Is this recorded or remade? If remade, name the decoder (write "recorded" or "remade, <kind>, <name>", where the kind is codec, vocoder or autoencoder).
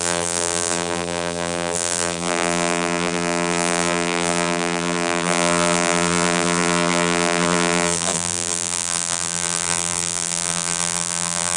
remade, vocoder, BigVGAN v2